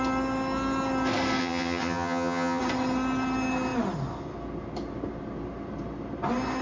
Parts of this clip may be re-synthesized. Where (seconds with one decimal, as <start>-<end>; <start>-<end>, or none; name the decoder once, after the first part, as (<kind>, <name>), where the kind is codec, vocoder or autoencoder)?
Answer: 1.4-2.6 (vocoder, HiFi-GAN)

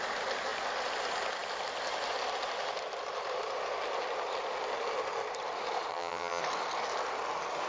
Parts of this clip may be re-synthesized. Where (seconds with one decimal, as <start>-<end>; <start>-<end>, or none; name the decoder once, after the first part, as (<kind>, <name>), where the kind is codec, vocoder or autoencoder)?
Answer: 5.9-6.4 (vocoder, HiFi-GAN)

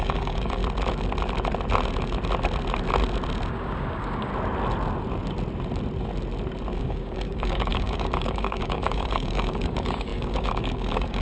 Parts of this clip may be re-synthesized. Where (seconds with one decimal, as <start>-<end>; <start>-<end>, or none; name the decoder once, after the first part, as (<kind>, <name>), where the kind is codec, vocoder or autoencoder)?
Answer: 0.0-0.6 (codec, DAC); 3.5-4.3; 6.8-11.2

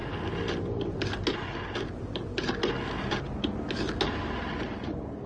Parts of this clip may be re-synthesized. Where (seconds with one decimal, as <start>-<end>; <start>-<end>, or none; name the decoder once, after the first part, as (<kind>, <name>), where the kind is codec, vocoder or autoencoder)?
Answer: none

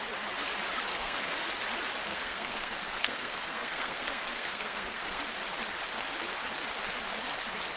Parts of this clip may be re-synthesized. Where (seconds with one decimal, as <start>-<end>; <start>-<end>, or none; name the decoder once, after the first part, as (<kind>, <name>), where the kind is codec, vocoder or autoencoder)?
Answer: 0.9-1.5 (codec, SNAC); 2.1-5.2

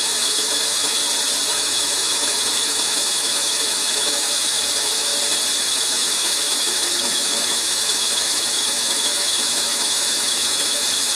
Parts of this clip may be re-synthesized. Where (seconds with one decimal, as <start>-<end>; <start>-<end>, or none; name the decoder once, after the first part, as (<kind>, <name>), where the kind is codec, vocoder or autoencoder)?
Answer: 0.0-1.0 (autoencoder, DAC-VAE); 1.5-5.1; 5.7-11.1

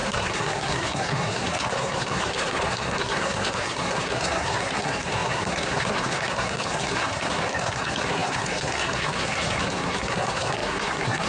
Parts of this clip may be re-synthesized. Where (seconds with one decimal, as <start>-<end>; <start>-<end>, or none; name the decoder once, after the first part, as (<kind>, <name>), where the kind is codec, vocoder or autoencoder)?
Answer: 0.0-11.3 (codec, SNAC)

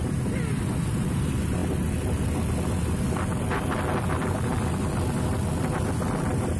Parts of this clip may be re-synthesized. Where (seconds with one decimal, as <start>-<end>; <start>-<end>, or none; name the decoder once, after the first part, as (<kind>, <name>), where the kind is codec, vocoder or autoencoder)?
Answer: none